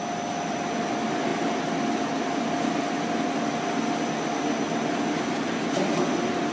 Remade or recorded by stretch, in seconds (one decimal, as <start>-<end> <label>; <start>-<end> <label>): 0.0-6.5 recorded